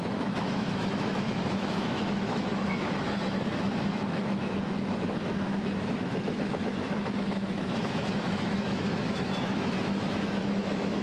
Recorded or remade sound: remade